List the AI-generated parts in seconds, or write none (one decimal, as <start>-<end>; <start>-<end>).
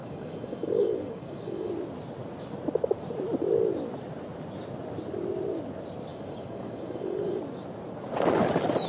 0.0-1.7; 6.1-7.4